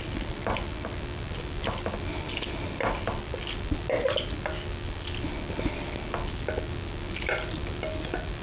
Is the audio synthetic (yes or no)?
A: no